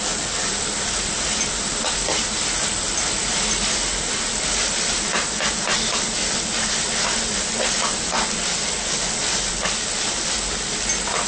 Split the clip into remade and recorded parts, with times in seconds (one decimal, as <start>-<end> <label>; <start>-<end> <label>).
0.0-11.3 recorded